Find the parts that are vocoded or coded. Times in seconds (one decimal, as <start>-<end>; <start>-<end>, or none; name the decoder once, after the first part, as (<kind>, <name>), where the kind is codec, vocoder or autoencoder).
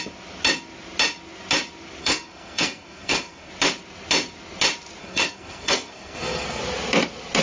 2.0-3.5 (codec, SNAC); 5.0-6.6